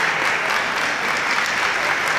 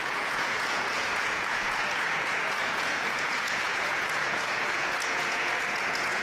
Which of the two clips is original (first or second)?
first